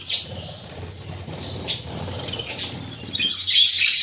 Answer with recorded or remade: recorded